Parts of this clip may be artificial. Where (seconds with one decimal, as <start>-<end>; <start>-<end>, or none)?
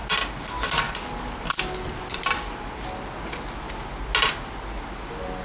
none